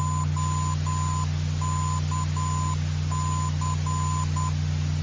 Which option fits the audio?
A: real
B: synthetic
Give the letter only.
A